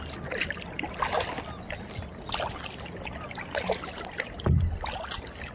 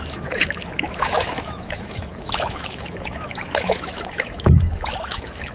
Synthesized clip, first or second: second